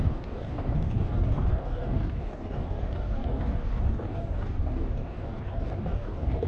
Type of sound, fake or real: fake